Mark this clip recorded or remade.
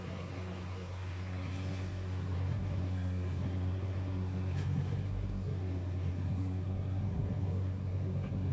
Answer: remade